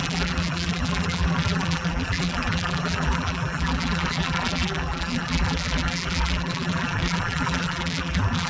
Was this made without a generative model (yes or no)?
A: no